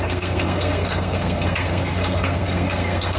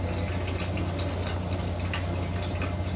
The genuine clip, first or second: second